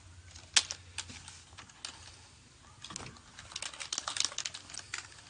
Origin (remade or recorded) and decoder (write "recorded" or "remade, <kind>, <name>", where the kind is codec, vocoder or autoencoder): recorded